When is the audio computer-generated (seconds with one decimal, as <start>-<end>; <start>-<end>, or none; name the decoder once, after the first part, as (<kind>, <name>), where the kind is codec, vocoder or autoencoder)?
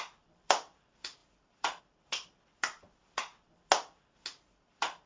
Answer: 0.0-3.3 (vocoder, BigVGAN v2)